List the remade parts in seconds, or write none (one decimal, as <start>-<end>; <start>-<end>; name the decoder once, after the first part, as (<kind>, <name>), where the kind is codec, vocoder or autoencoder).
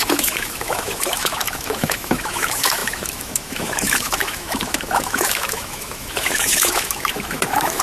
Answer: 0.0-7.8 (autoencoder, DAC-VAE)